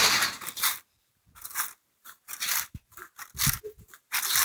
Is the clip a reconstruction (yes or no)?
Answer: yes